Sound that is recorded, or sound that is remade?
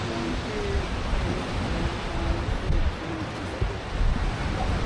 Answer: recorded